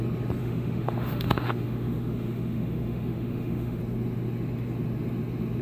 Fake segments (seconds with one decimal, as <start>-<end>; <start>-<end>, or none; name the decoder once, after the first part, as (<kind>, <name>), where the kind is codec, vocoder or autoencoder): 0.4-3.8 (autoencoder, DAC-VAE)